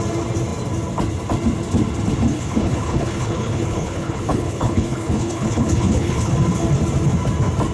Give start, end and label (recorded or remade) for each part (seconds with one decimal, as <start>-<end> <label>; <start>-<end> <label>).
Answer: 0.0-2.3 recorded; 2.3-6.3 remade; 6.3-7.7 recorded